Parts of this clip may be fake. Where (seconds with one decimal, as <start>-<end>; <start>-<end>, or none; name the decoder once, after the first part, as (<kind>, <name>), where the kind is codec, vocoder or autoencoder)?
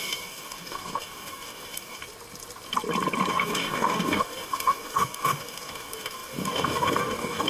0.0-2.0 (codec, DAC); 3.3-7.5